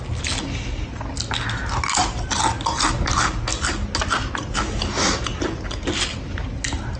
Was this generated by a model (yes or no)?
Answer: no